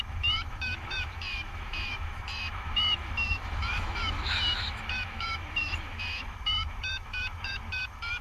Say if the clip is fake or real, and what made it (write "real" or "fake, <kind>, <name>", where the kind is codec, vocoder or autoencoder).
fake, autoencoder, DAC-VAE